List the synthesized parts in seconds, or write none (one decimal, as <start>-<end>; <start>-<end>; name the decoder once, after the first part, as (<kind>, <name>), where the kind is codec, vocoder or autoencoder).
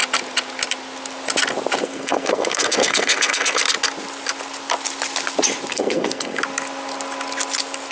1.8-3.6 (codec, SNAC); 5.7-6.4